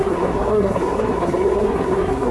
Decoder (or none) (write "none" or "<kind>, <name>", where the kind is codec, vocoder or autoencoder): codec, SNAC